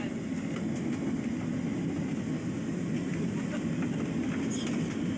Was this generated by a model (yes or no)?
no